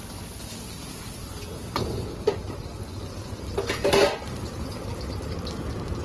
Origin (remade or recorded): recorded